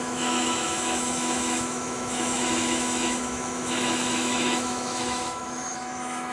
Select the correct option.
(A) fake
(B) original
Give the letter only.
A